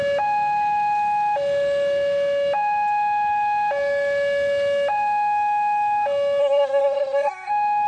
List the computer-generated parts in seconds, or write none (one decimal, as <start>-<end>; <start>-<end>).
6.4-7.5